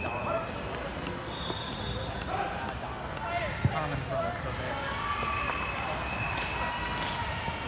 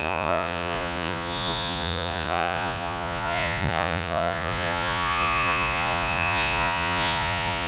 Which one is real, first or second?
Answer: first